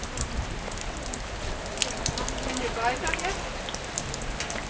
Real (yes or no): yes